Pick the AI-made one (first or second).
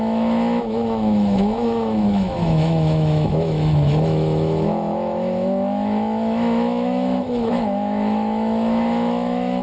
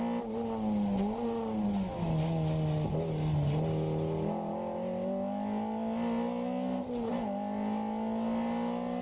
first